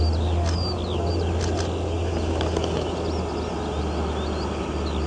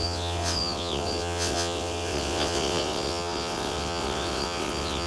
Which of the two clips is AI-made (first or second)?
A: second